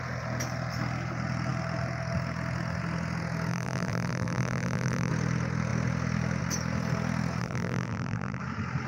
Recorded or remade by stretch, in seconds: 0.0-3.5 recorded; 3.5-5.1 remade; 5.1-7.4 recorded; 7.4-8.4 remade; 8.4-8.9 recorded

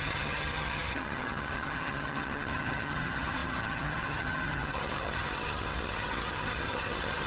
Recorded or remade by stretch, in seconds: 0.0-7.3 remade